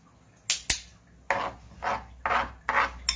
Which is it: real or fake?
real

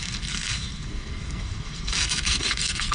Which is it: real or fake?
fake